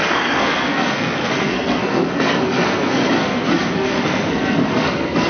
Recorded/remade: remade